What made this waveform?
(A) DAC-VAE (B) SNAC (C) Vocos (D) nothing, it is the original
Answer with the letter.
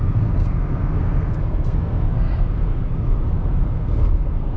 B